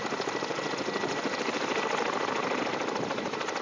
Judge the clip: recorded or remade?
recorded